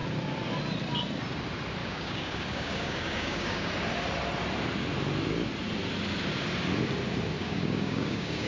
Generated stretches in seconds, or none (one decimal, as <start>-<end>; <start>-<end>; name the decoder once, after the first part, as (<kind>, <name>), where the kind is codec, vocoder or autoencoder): 1.8-3.7 (codec, DAC); 7.4-8.5